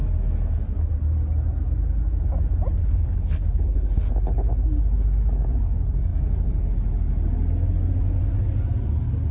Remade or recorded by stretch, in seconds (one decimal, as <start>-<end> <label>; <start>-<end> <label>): 0.0-2.8 recorded; 2.8-4.1 remade; 4.1-9.3 recorded